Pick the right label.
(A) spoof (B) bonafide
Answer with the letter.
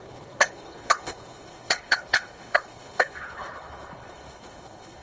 A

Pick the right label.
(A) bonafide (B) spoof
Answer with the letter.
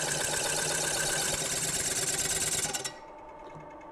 A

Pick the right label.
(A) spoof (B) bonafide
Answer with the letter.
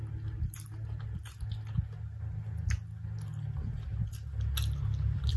B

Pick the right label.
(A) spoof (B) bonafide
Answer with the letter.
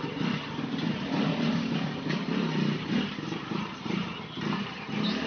A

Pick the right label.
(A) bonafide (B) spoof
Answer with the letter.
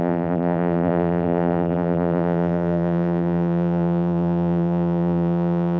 B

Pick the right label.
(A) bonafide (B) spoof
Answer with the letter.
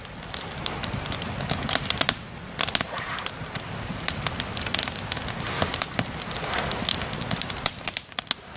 A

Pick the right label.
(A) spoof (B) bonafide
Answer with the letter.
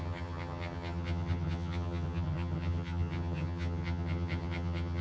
A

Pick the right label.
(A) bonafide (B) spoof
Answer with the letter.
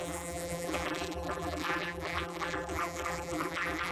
B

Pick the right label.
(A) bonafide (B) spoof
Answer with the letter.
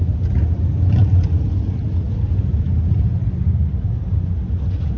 A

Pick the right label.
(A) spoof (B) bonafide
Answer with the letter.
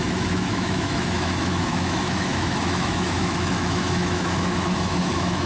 A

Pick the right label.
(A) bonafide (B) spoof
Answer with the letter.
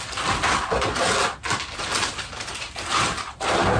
A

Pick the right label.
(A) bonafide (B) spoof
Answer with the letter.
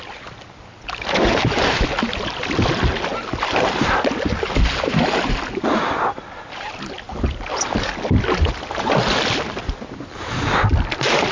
A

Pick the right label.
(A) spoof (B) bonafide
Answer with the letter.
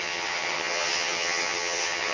A